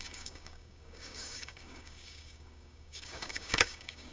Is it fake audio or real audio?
fake